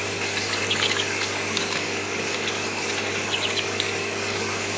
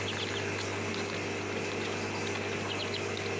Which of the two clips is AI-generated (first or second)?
first